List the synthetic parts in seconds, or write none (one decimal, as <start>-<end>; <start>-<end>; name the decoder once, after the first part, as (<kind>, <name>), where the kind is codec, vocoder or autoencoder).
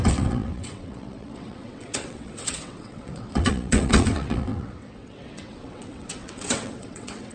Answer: 0.0-7.3 (vocoder, WaveNeXt)